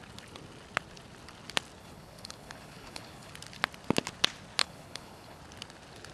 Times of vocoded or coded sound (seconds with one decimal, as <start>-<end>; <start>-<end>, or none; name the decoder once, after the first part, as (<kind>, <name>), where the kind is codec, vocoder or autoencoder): 1.8-3.3 (codec, HILCodec); 4.6-5.4